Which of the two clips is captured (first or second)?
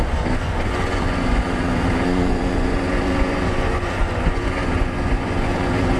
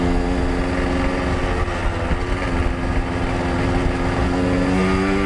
second